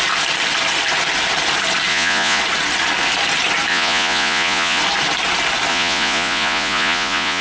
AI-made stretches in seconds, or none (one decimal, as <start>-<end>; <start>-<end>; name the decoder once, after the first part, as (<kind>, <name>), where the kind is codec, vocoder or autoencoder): 1.9-2.4 (vocoder, Vocos); 3.7-4.8; 5.7-7.4